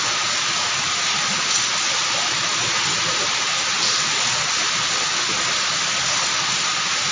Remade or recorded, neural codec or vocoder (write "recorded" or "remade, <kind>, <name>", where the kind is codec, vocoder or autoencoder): recorded